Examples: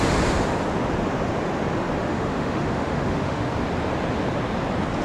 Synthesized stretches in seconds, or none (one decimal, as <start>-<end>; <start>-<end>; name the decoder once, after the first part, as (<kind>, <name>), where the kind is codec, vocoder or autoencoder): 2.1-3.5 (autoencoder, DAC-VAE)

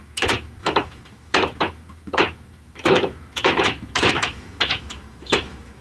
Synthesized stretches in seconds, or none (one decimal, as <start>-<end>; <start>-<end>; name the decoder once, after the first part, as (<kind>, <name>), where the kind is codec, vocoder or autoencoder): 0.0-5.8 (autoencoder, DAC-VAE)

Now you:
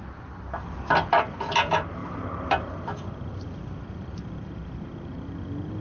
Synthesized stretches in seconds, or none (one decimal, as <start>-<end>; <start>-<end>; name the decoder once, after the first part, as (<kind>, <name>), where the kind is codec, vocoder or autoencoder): none

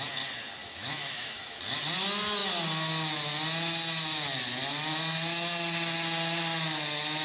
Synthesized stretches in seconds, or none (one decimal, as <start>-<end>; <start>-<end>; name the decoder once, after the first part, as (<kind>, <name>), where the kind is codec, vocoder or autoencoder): 0.6-1.6 (autoencoder, DAC-VAE)

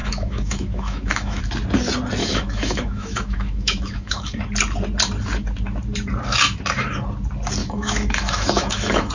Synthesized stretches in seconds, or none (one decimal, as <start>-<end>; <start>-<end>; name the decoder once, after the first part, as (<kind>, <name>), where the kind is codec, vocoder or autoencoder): 0.0-1.4 (autoencoder, DAC-VAE); 2.2-4.4; 7.6-9.1